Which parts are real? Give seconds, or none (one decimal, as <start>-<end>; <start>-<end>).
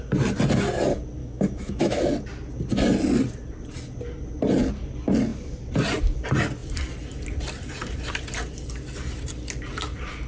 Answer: 0.0-1.2; 2.0-10.3